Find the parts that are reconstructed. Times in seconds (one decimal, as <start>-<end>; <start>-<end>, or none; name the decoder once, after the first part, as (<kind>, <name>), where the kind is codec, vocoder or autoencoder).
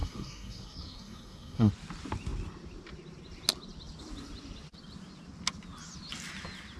0.0-1.7 (codec, SNAC)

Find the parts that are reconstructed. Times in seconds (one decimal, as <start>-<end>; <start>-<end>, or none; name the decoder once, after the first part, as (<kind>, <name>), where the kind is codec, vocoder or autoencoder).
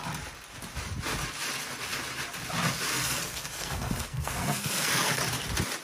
2.9-5.2 (codec, SNAC)